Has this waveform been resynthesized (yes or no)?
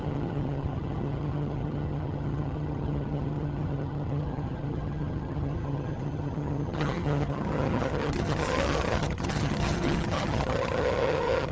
yes